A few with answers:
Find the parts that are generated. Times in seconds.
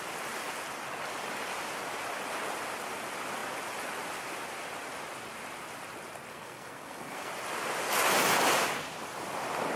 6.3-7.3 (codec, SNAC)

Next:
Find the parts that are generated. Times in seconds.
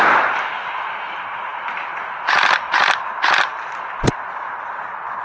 none